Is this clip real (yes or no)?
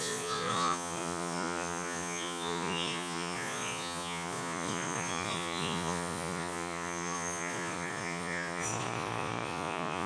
no